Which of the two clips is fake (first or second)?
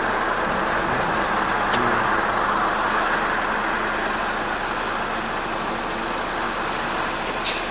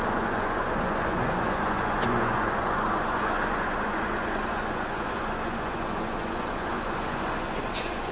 second